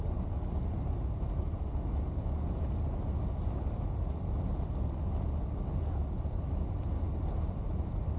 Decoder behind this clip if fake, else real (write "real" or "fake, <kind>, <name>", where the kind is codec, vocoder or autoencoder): real